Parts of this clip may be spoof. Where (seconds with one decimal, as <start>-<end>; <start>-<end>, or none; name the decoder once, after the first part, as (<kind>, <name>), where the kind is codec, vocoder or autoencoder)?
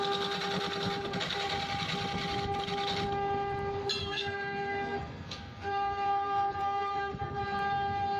4.0-7.4 (codec, SNAC)